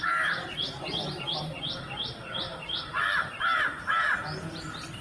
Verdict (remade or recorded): remade